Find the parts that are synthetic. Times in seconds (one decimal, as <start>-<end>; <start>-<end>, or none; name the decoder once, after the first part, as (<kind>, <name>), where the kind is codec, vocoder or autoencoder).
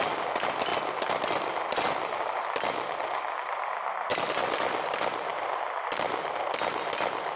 none